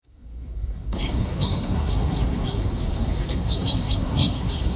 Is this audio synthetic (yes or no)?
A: yes